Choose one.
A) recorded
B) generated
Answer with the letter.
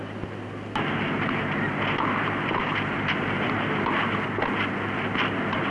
A